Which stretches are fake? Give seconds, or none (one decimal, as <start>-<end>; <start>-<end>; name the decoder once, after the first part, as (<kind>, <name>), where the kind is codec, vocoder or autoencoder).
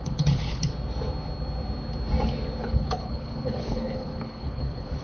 0.0-0.7 (codec, HILCodec); 2.6-5.0